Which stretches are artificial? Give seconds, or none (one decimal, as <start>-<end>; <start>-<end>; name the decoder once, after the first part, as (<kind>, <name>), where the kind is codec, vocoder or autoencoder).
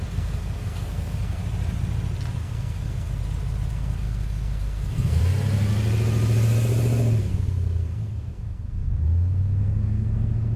0.0-1.4 (codec, SNAC); 2.4-3.2; 3.7-5.2; 7.2-10.6